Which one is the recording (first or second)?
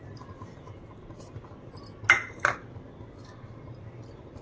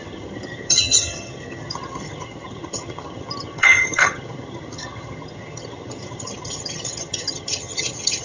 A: first